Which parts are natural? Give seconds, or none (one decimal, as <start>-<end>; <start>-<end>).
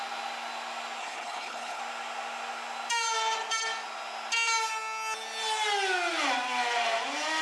0.0-1.0; 1.8-7.4